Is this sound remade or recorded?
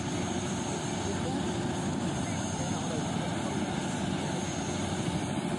recorded